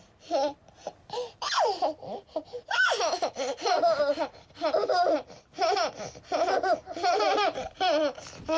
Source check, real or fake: real